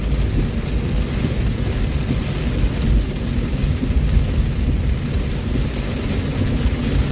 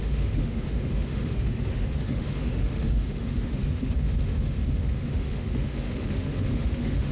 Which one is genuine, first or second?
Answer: first